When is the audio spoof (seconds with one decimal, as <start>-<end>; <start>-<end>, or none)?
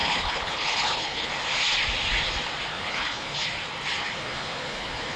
0.0-1.3; 2.7-3.4; 4.0-5.2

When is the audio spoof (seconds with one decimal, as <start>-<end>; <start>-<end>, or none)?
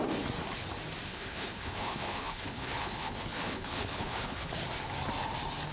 1.1-4.5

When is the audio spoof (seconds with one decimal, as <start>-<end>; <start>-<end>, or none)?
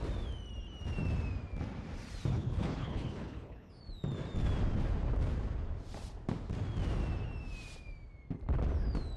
2.3-3.7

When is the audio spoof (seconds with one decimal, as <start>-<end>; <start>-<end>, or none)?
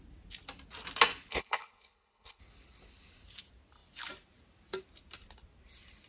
1.3-2.4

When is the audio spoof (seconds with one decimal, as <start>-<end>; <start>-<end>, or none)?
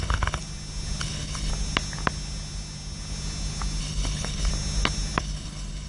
0.0-0.4; 1.0-1.5; 3.8-4.5; 5.2-5.9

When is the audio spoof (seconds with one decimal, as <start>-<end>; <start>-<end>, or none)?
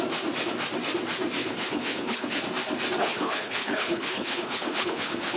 1.4-2.3; 3.0-5.4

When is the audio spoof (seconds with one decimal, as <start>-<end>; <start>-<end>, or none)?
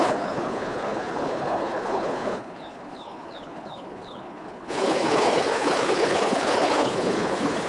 0.0-7.7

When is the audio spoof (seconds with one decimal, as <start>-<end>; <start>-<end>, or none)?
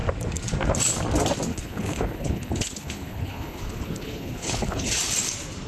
1.5-4.9